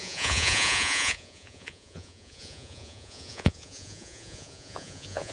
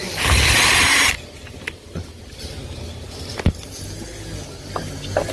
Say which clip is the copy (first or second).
first